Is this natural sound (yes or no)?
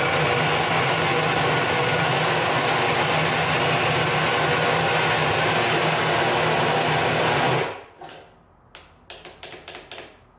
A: yes